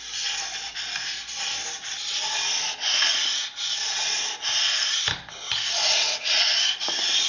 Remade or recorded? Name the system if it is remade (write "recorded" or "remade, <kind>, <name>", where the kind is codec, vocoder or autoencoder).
recorded